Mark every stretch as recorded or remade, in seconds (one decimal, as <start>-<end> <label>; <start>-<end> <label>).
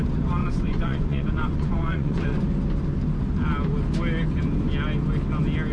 0.0-0.4 recorded; 0.4-2.4 remade; 2.4-5.7 recorded